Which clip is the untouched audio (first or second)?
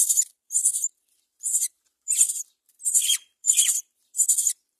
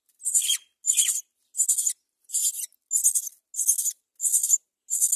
second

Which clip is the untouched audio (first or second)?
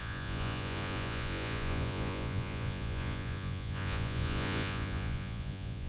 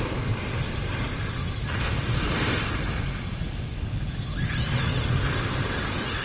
second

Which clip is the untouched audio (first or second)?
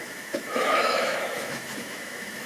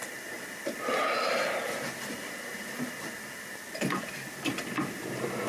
second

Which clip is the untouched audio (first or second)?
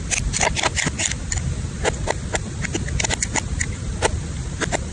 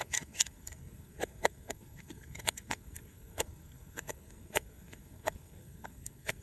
first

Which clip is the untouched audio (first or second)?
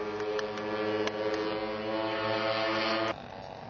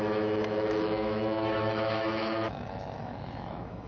first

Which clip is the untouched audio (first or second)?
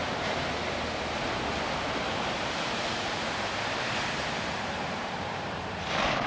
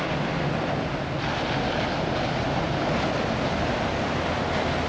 second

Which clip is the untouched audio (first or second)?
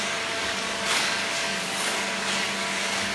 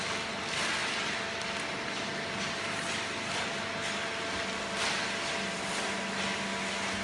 second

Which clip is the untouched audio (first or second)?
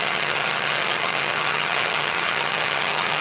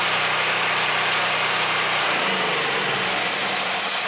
second